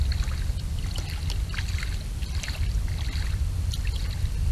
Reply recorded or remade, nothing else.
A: recorded